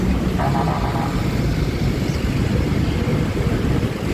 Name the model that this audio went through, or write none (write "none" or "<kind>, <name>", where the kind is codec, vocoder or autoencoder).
none